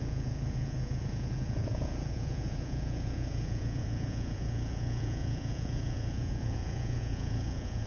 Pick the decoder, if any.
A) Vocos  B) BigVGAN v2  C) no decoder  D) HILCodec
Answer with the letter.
A